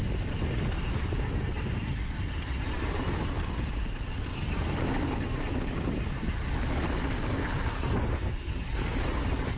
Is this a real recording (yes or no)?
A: yes